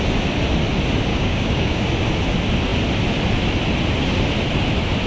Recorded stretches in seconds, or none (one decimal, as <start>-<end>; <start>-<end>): 0.0-1.1; 1.9-5.1